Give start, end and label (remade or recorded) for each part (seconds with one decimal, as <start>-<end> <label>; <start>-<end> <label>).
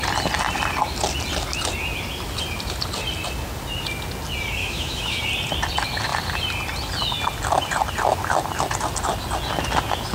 0.0-4.6 recorded; 4.6-5.2 remade; 5.2-10.1 recorded